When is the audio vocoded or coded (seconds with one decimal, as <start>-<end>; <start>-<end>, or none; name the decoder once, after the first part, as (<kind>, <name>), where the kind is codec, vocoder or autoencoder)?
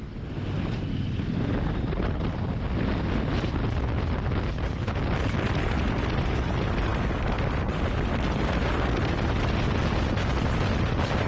none